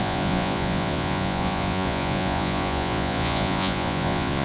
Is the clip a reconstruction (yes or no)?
yes